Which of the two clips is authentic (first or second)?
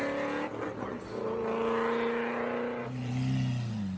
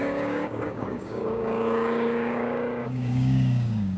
first